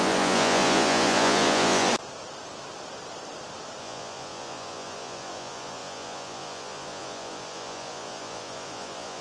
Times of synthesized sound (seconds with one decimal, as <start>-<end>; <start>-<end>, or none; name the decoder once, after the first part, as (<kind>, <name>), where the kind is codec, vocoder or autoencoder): 0.0-1.9 (vocoder, Vocos); 3.8-9.2